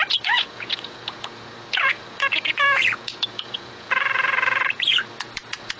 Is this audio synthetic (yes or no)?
yes